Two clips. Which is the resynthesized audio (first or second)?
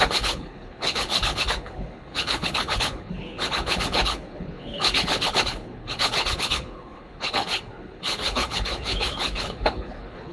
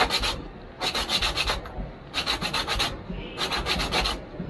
first